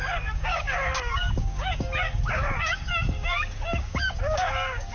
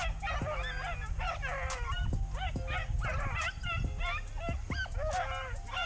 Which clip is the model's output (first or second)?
first